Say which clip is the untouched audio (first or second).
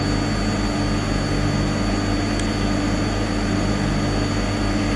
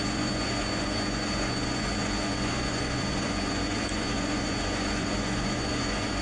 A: first